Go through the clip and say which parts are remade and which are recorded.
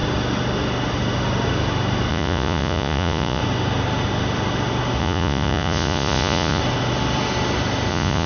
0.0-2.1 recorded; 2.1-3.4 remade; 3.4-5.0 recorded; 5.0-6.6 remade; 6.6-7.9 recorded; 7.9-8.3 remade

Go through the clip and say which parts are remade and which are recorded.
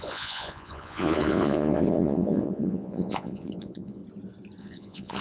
0.0-4.0 remade; 4.0-4.6 recorded; 4.6-5.2 remade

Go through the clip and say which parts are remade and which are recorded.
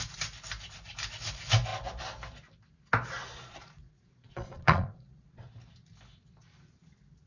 0.0-3.2 recorded; 3.2-5.5 remade; 5.5-7.3 recorded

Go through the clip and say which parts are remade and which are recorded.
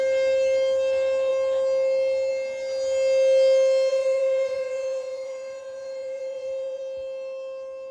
0.0-3.9 recorded; 3.9-6.8 remade; 6.8-7.9 recorded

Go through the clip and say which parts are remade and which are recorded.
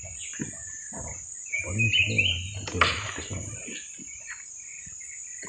0.0-5.5 recorded